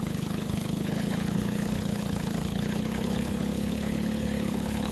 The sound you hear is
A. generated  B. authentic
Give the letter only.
A